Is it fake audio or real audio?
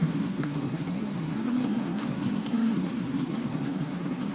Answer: fake